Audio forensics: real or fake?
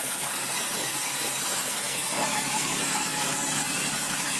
fake